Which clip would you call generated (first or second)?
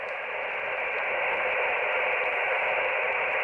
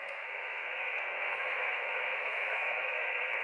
second